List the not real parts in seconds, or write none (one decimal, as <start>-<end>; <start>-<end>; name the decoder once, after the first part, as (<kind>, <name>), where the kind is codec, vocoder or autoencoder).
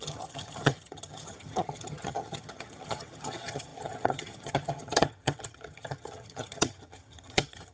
0.0-7.7 (vocoder, HiFi-GAN)